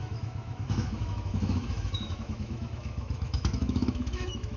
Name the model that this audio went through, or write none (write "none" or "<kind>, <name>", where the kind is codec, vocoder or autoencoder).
autoencoder, DAC-VAE